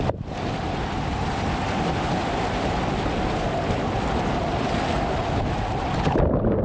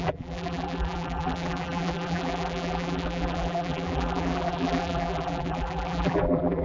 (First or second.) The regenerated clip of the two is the second